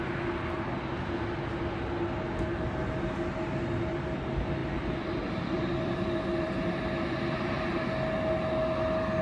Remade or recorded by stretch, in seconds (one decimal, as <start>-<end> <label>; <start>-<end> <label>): 0.0-4.6 recorded; 4.6-7.8 remade; 7.8-9.2 recorded